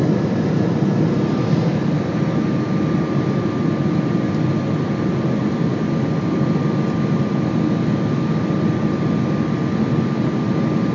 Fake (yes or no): no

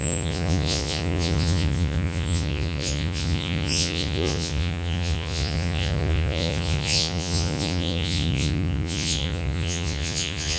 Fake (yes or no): yes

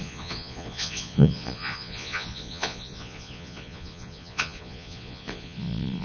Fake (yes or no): yes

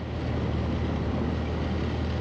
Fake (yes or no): no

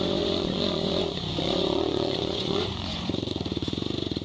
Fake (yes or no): yes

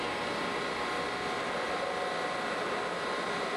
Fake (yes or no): no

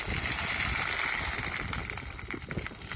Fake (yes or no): no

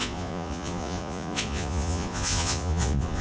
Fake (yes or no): yes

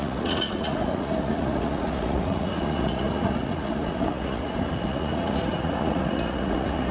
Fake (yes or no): yes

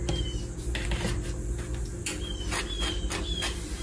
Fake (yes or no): no